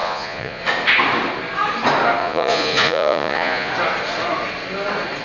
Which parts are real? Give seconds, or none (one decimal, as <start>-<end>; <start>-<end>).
0.6-2.2; 3.7-5.2